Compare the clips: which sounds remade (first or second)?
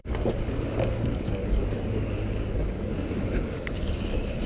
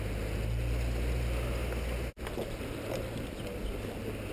first